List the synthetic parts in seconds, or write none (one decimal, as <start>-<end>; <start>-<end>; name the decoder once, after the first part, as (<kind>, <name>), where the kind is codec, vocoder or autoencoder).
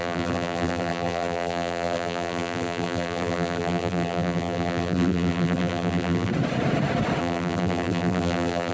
0.0-6.3 (vocoder, BigVGAN v2); 7.2-8.7